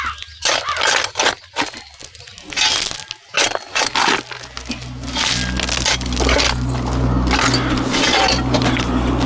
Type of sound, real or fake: real